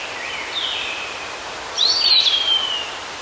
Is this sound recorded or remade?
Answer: recorded